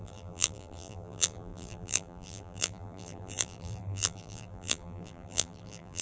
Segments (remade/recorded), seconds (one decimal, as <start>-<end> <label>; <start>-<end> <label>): 0.0-6.0 remade